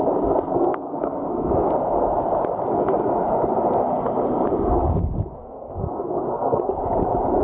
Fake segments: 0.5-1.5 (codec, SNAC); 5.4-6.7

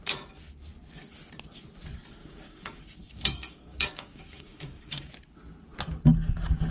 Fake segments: 2.2-5.1 (codec, DAC)

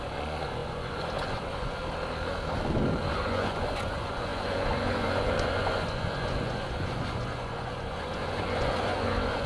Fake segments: 0.0-1.8 (vocoder, Vocos); 3.0-9.5